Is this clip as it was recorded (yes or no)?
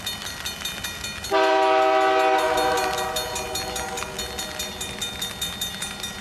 yes